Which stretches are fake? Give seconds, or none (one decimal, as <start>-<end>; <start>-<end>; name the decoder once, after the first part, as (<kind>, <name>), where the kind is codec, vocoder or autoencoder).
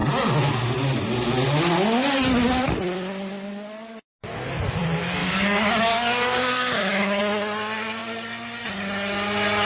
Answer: 5.2-7.2 (codec, DAC)